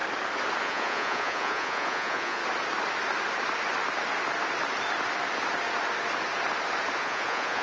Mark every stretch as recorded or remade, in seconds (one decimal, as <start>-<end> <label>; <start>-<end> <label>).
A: 0.0-0.6 recorded; 0.6-2.4 remade; 2.4-7.0 recorded; 7.0-7.6 remade